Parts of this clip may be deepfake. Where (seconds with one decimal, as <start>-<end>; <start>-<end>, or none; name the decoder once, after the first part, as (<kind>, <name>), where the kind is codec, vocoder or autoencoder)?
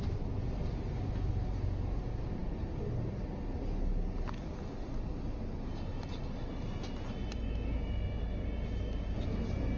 none